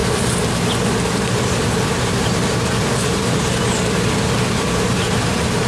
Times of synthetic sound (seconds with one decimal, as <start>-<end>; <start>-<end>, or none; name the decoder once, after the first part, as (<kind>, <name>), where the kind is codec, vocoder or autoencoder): none